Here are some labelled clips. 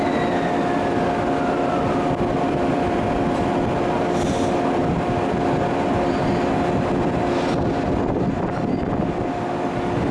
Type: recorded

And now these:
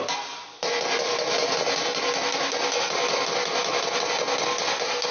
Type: recorded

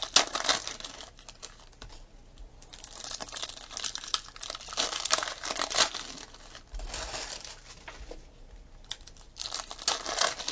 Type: recorded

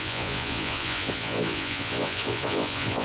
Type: remade